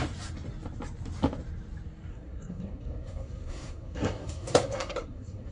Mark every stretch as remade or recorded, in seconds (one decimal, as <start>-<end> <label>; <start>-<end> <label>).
0.0-2.1 recorded; 2.1-5.5 remade